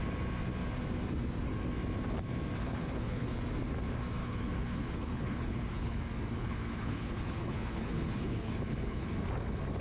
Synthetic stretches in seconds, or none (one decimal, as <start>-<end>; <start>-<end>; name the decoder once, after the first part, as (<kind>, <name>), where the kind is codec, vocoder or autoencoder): 2.6-3.4 (codec, HILCodec); 4.2-6.0; 6.4-9.1